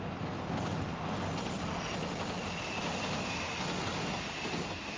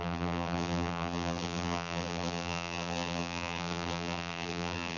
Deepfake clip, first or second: second